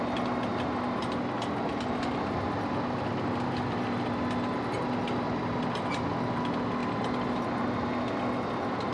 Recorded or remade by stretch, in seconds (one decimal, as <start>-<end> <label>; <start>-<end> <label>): 0.0-8.9 recorded